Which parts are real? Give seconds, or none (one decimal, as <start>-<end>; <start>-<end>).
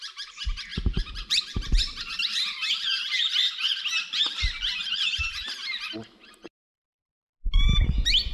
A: 0.0-0.7; 1.4-8.3